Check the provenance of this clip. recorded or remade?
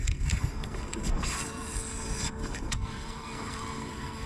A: remade